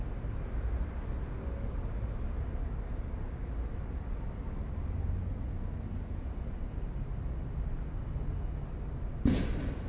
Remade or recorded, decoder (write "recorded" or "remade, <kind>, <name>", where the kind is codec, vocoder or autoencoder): recorded